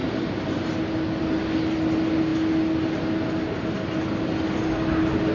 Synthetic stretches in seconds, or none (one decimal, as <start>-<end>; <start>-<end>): none

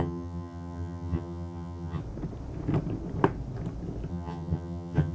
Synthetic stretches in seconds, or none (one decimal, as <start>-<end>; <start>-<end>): 0.0-2.0; 4.1-5.1

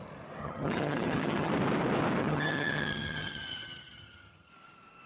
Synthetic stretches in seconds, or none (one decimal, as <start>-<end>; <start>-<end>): 0.4-1.5; 2.2-4.5

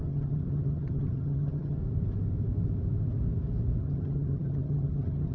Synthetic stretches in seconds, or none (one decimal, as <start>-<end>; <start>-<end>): 0.0-1.8; 3.8-5.3

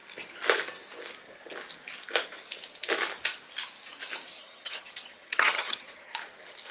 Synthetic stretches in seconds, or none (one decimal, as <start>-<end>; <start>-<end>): 4.3-6.1

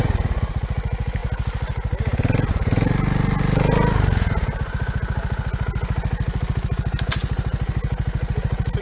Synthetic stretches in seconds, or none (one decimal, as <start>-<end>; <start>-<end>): none